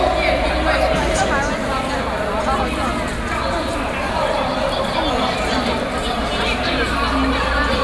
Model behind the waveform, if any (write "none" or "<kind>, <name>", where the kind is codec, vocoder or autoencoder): none